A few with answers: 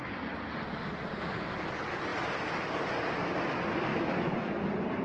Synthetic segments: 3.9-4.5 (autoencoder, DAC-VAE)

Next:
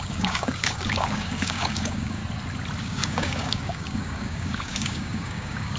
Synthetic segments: 0.0-2.2 (codec, DAC); 2.8-5.8

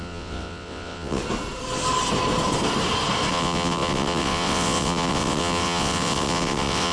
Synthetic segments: 0.0-1.2 (vocoder, WaveNeXt); 3.3-6.9